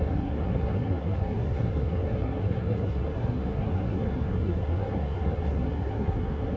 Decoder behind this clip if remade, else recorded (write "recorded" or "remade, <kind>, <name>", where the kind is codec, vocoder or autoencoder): remade, codec, SNAC